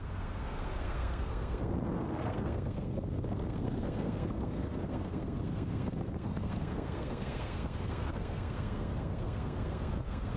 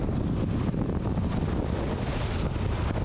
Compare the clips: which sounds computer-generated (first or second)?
first